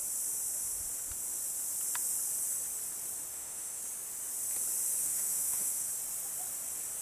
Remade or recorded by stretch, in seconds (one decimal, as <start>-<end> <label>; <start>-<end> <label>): 0.0-3.3 recorded; 3.3-3.8 remade; 3.8-5.0 recorded; 5.0-5.9 remade; 5.9-7.0 recorded